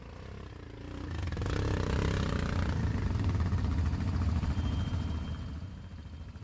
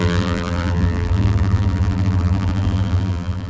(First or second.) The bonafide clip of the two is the first